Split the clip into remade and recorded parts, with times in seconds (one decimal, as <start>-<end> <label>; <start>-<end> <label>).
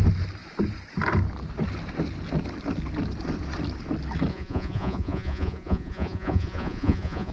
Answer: 0.0-4.3 recorded; 4.3-7.3 remade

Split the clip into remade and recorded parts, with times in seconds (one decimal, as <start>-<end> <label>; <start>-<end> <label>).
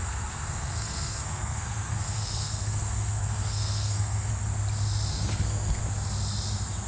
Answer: 0.0-4.3 remade; 4.3-5.1 recorded; 5.1-5.8 remade; 5.8-6.9 recorded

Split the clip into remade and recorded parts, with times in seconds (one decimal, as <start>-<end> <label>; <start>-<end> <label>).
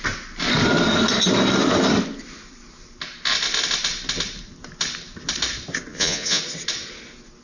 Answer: 0.0-5.9 recorded; 5.9-6.4 remade; 6.4-7.4 recorded